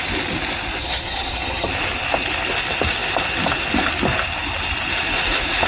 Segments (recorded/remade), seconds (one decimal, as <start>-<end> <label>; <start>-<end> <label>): 0.0-0.8 recorded; 0.8-1.7 remade; 1.7-5.7 recorded